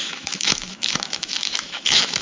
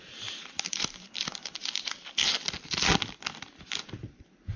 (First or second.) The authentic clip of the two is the second